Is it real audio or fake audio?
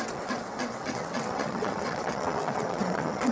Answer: fake